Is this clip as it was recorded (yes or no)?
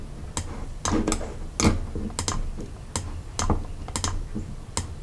yes